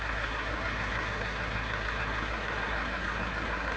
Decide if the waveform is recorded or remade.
remade